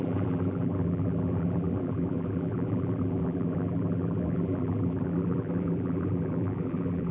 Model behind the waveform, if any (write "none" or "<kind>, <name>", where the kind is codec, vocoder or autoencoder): vocoder, BigVGAN v2